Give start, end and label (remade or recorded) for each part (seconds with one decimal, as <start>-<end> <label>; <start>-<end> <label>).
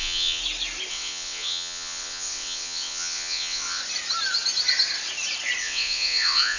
0.0-0.4 remade; 0.4-0.9 recorded; 0.9-3.8 remade; 3.8-5.6 recorded; 5.6-6.6 remade